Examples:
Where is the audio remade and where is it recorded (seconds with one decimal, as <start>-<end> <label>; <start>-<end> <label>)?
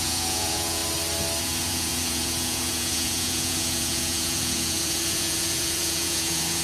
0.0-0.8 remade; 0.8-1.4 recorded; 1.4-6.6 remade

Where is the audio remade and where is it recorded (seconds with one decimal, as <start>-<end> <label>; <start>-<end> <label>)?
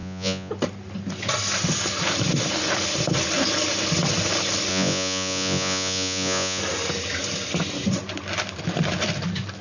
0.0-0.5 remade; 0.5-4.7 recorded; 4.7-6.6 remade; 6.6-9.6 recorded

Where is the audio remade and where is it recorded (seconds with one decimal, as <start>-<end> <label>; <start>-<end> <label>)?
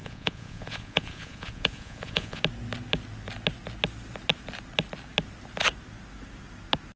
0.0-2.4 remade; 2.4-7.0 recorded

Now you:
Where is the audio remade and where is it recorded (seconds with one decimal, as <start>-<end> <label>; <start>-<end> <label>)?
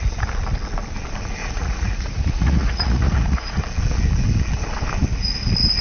0.0-1.4 recorded; 1.4-3.6 remade; 3.6-5.8 recorded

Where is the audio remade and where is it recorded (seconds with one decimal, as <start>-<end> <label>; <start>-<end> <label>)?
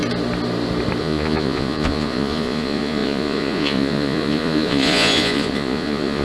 0.0-1.0 recorded; 1.0-6.2 remade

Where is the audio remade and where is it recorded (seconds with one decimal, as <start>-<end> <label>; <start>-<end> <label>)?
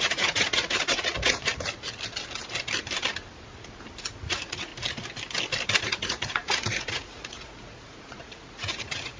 0.0-1.5 remade; 1.5-4.2 recorded; 4.2-4.7 remade; 4.7-5.8 recorded; 5.8-9.2 remade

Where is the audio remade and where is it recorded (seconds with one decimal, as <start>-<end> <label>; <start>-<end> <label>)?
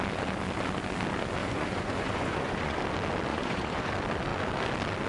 0.0-1.4 recorded; 1.4-2.8 remade; 2.8-3.3 recorded; 3.3-3.9 remade; 3.9-5.1 recorded